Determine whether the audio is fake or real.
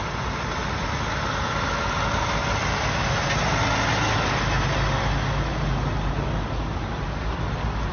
real